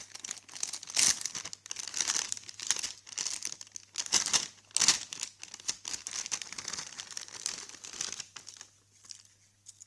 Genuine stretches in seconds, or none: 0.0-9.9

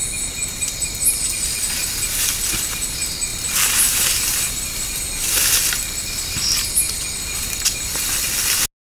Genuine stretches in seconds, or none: 0.0-3.3; 4.0-8.8

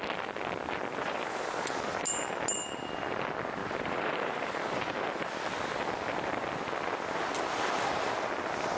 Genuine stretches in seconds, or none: 0.0-0.9; 2.2-3.6; 5.3-8.8

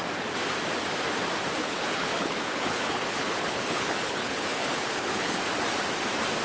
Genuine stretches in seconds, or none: 0.0-1.6; 5.4-6.4

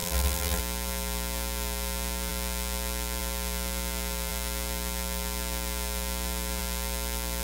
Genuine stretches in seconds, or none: 0.6-7.4

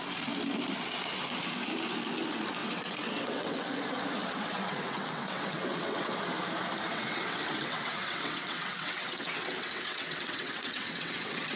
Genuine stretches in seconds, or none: 0.0-2.6; 3.6-4.2; 6.1-6.9